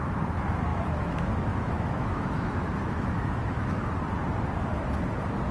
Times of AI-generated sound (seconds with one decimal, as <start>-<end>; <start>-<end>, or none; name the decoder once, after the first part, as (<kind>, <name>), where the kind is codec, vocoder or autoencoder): 0.7-3.9 (autoencoder, DAC-VAE)

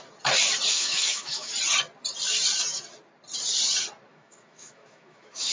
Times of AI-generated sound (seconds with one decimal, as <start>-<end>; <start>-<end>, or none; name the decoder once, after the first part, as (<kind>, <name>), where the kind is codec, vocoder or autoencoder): 0.7-1.5 (autoencoder, DAC-VAE); 4.1-5.5